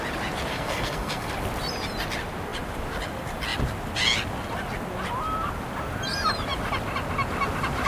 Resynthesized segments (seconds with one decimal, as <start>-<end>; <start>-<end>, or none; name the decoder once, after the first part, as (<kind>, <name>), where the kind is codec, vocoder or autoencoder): 0.5-1.3 (codec, SNAC)